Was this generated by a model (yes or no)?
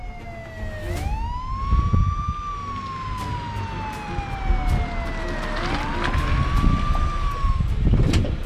no